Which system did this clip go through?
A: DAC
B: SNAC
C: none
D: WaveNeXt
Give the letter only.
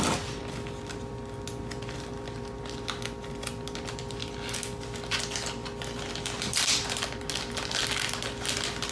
C